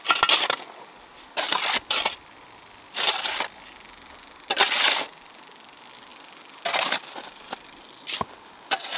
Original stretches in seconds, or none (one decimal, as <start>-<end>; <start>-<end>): 0.0-9.0